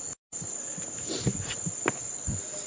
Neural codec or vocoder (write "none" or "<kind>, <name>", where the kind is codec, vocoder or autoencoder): none